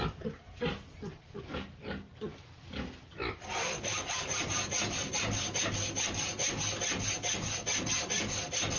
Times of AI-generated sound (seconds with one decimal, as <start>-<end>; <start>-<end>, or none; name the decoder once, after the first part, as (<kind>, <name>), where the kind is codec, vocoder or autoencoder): none